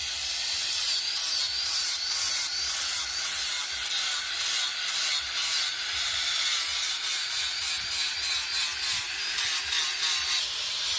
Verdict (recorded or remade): recorded